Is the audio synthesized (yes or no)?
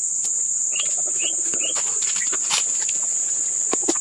yes